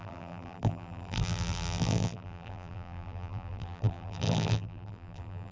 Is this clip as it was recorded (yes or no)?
no